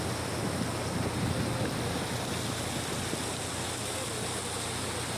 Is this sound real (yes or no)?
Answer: yes